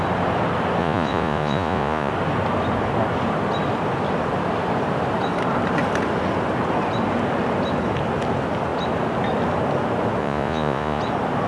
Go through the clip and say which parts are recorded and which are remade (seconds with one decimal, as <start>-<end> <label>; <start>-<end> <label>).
0.0-0.8 recorded; 0.8-2.1 remade; 2.1-10.2 recorded; 10.2-11.0 remade; 11.0-11.5 recorded